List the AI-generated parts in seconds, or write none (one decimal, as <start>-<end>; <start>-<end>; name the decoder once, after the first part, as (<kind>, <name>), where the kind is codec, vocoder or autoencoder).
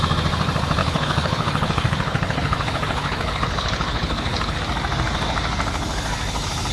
0.8-4.6 (codec, HILCodec)